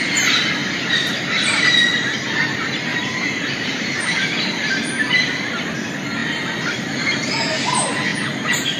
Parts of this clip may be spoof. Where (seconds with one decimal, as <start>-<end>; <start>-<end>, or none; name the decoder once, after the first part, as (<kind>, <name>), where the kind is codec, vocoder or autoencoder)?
2.9-4.3 (vocoder, BigVGAN v2)